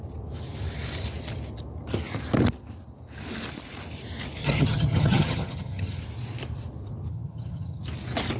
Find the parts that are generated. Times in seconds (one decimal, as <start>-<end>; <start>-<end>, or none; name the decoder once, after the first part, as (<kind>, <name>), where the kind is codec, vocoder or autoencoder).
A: 4.4-6.0 (vocoder, HiFi-GAN); 7.1-7.8